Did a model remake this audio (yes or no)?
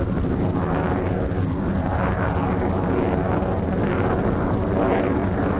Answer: no